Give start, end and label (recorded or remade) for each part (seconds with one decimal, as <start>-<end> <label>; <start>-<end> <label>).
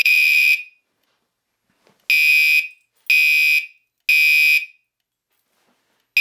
0.0-1.5 remade; 1.5-6.2 recorded